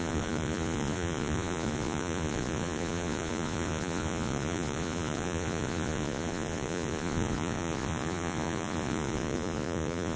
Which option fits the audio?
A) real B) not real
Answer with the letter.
B